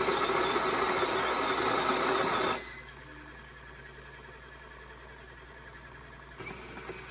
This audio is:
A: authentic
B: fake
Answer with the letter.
A